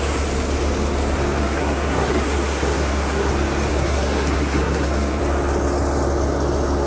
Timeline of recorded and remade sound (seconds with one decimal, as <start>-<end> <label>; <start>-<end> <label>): 0.0-1.4 recorded; 1.4-3.3 remade; 3.3-3.7 recorded; 3.7-5.2 remade; 5.2-6.9 recorded